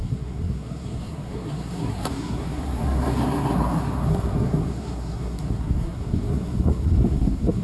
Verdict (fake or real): fake